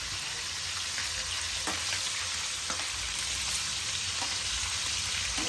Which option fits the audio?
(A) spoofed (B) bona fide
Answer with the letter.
B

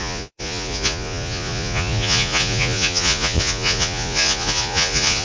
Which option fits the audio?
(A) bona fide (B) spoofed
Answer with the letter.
B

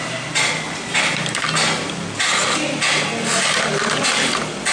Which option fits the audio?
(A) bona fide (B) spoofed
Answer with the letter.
A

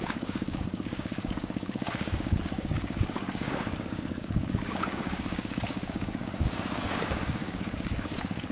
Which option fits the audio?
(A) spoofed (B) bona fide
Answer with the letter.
A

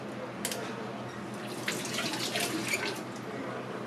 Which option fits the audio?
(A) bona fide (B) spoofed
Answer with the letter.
A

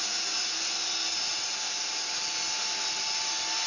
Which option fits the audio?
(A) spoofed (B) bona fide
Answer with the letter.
B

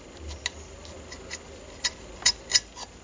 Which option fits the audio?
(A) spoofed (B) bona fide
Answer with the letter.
B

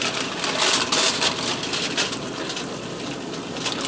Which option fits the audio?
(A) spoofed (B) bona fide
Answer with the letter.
B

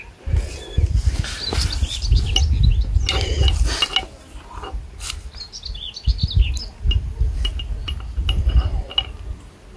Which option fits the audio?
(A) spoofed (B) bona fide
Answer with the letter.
B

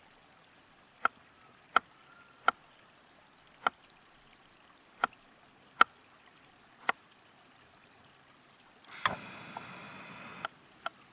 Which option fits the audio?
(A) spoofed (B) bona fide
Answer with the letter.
B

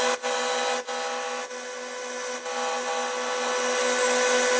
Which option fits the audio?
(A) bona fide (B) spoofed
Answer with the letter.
A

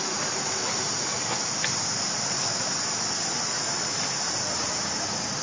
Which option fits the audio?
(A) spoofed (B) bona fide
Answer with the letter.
B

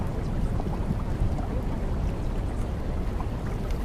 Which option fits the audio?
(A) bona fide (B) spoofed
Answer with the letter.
A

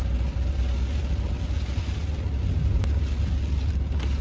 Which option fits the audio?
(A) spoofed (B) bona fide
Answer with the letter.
B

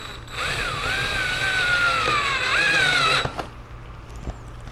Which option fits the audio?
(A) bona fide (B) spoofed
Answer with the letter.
A